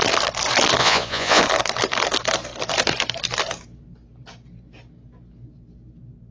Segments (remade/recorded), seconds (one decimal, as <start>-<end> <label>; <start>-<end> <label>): 0.0-0.8 recorded; 0.8-1.4 remade; 1.4-6.3 recorded